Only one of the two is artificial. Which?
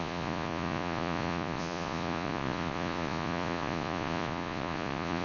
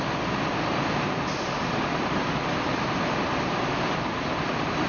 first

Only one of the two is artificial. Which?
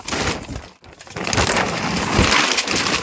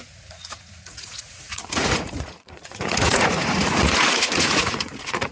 second